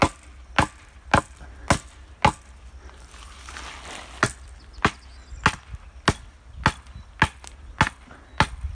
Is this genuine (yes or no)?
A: yes